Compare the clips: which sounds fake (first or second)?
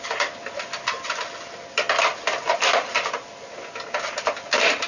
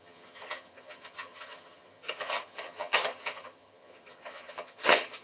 second